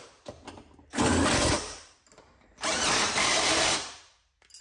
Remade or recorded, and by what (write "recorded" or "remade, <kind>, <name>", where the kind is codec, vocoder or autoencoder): remade, vocoder, BigVGAN v2